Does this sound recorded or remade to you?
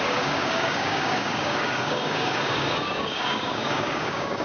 remade